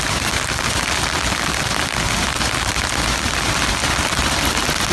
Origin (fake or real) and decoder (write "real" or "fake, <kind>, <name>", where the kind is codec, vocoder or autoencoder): real